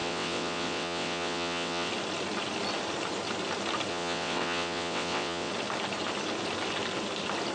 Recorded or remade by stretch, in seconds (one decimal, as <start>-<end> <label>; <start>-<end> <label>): 0.0-1.9 remade; 1.9-3.9 recorded; 3.9-5.5 remade; 5.5-7.5 recorded